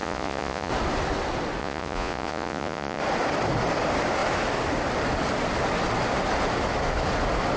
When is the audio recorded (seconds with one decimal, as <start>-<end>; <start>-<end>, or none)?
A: 0.7-1.6; 3.0-7.6